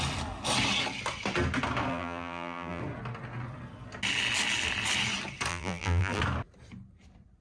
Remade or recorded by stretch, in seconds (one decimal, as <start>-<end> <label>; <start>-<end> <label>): 0.0-1.9 recorded; 1.9-2.8 remade; 2.8-5.5 recorded; 5.5-6.2 remade; 6.2-7.4 recorded